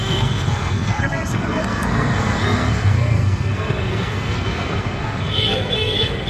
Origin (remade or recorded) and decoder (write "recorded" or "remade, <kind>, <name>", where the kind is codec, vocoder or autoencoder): remade, codec, SNAC